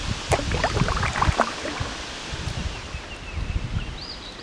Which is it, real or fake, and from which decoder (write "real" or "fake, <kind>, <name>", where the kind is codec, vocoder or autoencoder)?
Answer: real